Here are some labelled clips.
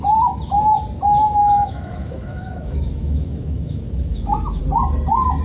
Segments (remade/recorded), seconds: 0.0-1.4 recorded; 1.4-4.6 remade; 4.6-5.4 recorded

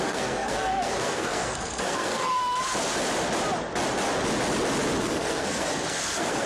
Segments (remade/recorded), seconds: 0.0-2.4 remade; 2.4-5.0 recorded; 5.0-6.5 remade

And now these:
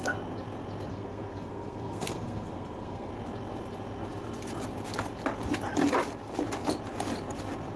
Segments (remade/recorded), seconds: 0.0-0.9 recorded; 0.9-3.1 remade; 3.1-7.8 recorded

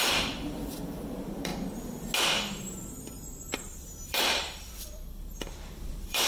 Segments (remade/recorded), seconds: 0.0-1.5 remade; 1.5-3.4 recorded; 3.4-6.3 remade

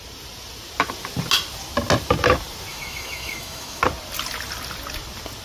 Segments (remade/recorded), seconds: 0.0-2.7 recorded; 2.7-3.8 remade; 3.8-5.4 recorded

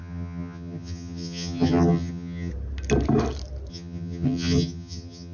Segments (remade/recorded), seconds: 0.0-2.5 remade; 2.5-3.7 recorded; 3.7-5.3 remade